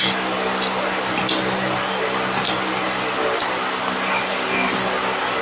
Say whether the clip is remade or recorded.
recorded